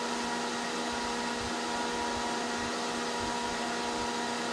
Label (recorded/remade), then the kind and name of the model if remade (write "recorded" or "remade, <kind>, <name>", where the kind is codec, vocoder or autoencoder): recorded